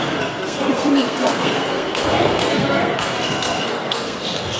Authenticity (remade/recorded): remade